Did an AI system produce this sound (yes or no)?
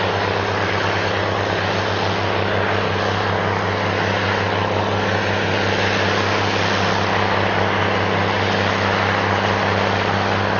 no